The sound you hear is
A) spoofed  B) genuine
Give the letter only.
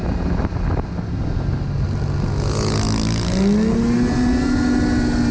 B